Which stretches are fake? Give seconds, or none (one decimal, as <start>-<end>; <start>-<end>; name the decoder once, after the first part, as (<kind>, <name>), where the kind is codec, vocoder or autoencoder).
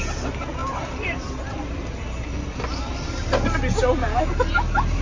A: 0.6-3.6 (vocoder, BigVGAN v2)